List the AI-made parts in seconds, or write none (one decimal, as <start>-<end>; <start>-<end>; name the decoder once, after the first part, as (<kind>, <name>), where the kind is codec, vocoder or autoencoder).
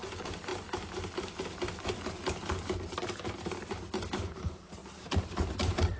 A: 0.0-0.5 (vocoder, BigVGAN v2); 4.1-6.0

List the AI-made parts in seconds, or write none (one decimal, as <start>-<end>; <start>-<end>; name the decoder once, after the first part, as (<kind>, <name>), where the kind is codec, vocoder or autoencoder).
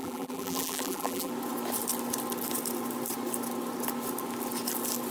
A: 0.0-1.3 (vocoder, BigVGAN v2)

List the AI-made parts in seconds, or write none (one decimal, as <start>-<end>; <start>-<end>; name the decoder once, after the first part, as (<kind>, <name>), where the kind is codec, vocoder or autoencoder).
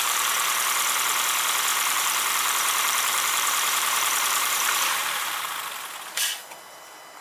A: 1.7-5.4 (vocoder, BigVGAN v2)